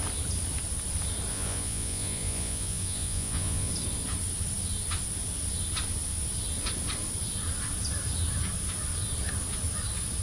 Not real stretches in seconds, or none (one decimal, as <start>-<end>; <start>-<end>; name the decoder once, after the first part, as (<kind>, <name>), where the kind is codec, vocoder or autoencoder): 1.3-3.7 (vocoder, Vocos)